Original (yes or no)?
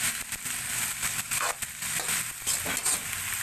yes